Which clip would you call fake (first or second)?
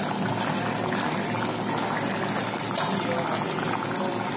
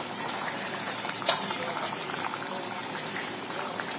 second